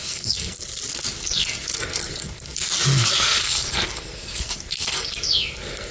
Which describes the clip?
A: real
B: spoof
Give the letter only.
B